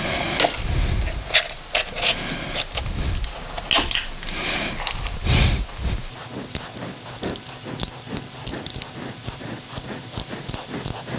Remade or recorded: recorded